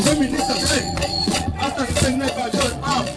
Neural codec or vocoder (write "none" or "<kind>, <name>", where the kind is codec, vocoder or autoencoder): vocoder, Vocos